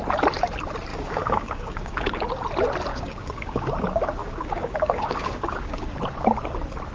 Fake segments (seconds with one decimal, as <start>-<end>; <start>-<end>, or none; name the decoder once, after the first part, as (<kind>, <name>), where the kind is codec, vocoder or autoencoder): 0.9-2.2 (codec, DAC); 2.9-3.7; 4.2-5.9